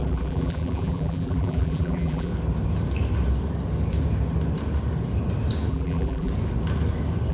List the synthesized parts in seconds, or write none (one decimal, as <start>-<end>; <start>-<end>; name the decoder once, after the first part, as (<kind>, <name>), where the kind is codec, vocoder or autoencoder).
0.0-2.3 (vocoder, BigVGAN v2); 5.7-6.3